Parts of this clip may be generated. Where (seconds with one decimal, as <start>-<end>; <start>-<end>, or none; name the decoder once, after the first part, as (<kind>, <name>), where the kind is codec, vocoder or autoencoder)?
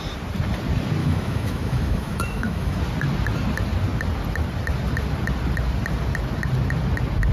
1.0-2.8 (autoencoder, DAC-VAE)